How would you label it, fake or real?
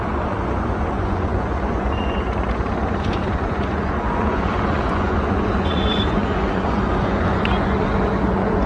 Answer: fake